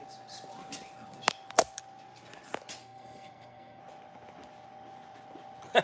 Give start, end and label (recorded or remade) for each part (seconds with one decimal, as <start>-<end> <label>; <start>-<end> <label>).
0.0-2.8 recorded; 2.8-3.8 remade; 3.8-5.8 recorded

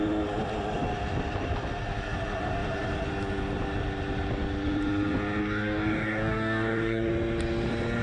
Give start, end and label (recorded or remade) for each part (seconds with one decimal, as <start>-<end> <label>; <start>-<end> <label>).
0.0-5.4 recorded; 5.4-7.1 remade; 7.1-8.0 recorded

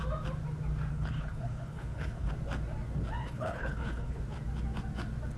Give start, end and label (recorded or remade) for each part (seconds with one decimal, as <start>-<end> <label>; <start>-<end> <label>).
0.0-0.9 recorded; 0.9-2.3 remade; 2.3-3.2 recorded; 3.2-4.2 remade; 4.2-5.4 recorded